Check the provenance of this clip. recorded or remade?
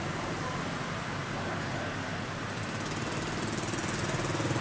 recorded